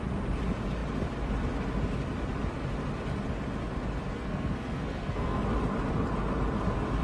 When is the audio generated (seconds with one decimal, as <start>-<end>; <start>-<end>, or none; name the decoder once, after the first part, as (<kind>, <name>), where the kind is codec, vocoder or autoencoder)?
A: 4.1-5.4 (codec, SNAC)